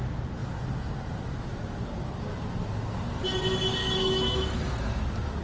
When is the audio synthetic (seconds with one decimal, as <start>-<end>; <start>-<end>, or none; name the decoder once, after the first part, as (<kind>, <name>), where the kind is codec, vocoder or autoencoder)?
3.8-5.0 (autoencoder, DAC-VAE)